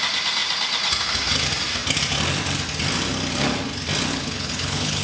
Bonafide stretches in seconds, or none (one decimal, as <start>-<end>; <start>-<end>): 0.0-4.1